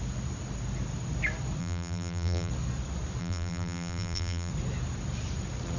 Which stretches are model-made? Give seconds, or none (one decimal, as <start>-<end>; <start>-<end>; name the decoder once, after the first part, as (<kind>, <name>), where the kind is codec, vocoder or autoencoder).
1.6-2.5 (vocoder, BigVGAN v2); 3.2-4.5